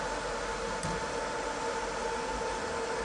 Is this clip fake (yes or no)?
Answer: no